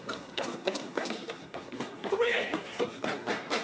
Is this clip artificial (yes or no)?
yes